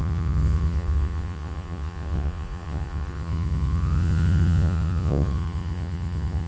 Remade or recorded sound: remade